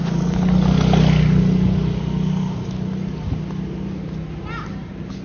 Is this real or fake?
real